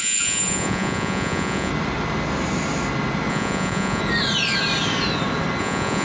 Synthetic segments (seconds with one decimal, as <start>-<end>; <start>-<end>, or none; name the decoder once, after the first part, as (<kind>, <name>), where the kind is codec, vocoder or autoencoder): 0.0-1.7 (vocoder, Vocos); 3.3-4.0; 5.6-6.0